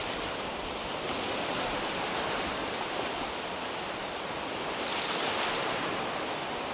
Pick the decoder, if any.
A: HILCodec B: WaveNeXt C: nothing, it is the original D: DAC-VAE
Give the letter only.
C